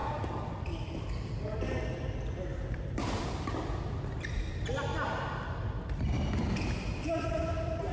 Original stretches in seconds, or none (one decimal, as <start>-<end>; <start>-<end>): 4.9-6.0